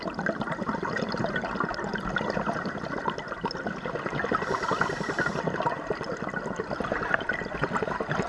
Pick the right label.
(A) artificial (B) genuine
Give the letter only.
B